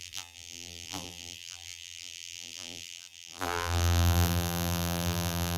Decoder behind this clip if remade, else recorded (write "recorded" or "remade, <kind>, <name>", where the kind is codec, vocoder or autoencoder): remade, vocoder, BigVGAN v2